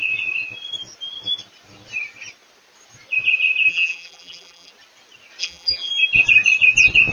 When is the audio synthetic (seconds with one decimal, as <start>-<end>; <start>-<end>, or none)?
3.7-4.7; 5.4-5.9